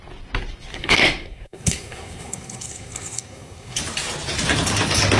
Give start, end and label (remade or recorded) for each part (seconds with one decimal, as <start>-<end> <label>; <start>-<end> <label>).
0.0-0.7 recorded; 0.7-3.8 remade; 3.8-5.2 recorded